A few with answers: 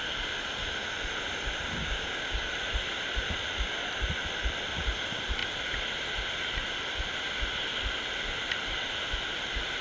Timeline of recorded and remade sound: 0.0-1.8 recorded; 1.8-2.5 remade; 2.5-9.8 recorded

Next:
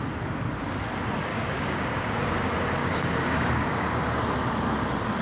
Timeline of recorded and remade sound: 0.0-1.3 recorded; 1.3-2.2 remade; 2.2-2.8 recorded; 2.8-4.0 remade; 4.0-5.2 recorded

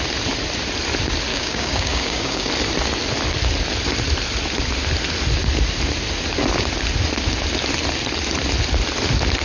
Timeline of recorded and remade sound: 0.0-1.3 recorded; 1.3-2.5 remade; 2.5-9.4 recorded